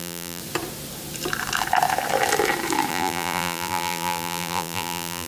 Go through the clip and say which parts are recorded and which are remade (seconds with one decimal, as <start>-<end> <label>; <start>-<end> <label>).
0.0-0.4 remade; 0.4-2.9 recorded; 2.9-5.3 remade

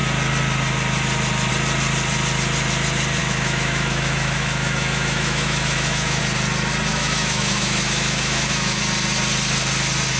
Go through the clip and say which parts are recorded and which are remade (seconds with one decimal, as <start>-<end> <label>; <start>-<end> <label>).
0.0-3.2 recorded; 3.2-6.2 remade; 6.2-6.9 recorded; 6.9-8.8 remade; 8.8-10.2 recorded

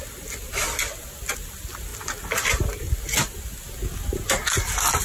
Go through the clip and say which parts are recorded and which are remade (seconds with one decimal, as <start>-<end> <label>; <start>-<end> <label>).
0.0-5.0 recorded

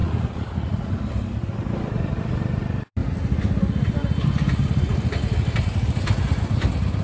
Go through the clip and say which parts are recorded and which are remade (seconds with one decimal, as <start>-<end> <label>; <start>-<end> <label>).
0.0-0.9 remade; 0.9-7.0 recorded